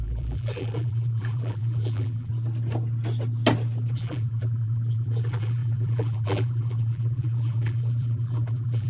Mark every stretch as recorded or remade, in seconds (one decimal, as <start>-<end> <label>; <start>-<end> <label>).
0.0-2.3 remade; 2.3-3.9 recorded; 3.9-8.9 remade